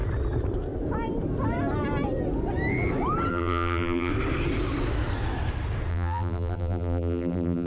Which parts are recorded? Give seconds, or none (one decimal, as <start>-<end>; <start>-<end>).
0.0-3.3; 4.1-5.9